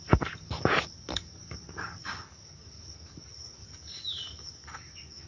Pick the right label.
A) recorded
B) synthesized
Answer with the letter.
B